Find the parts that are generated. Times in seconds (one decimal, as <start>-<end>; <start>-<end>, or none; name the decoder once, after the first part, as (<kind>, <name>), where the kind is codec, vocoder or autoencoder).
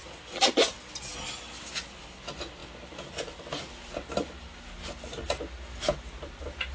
none